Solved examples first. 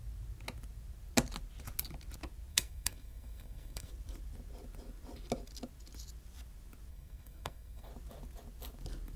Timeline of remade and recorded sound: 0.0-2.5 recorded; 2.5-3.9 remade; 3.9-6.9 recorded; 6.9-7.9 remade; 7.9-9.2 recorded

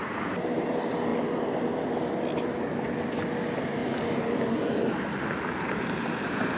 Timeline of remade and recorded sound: 0.0-6.6 recorded

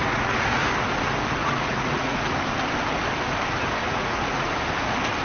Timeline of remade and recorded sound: 0.0-0.7 remade; 0.7-1.4 recorded; 1.4-2.3 remade; 2.3-3.8 recorded; 3.8-4.5 remade; 4.5-5.2 recorded

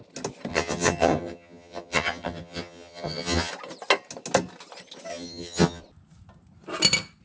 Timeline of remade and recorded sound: 0.0-0.5 recorded; 0.5-3.5 remade; 3.5-5.1 recorded; 5.1-5.8 remade; 5.8-7.2 recorded

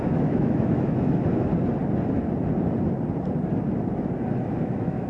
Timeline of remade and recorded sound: 0.0-1.5 remade; 1.5-4.6 recorded; 4.6-5.1 remade

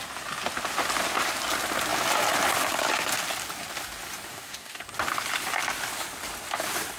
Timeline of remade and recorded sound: 0.0-4.3 recorded; 4.3-4.8 remade; 4.8-7.0 recorded

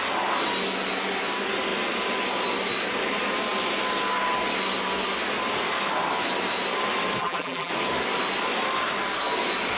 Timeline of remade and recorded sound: 0.0-7.2 recorded; 7.2-7.7 remade; 7.7-9.8 recorded

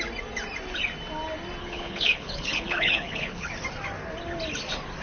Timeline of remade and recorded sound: 0.0-1.6 recorded; 1.6-3.5 remade; 3.5-5.0 recorded